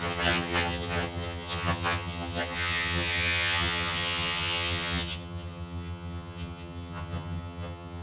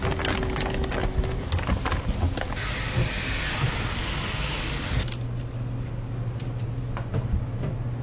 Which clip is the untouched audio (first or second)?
second